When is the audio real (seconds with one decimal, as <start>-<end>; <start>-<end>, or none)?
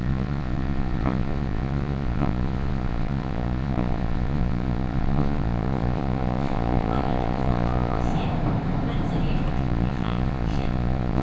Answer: 8.1-9.5